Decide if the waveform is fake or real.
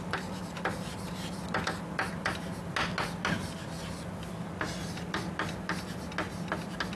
real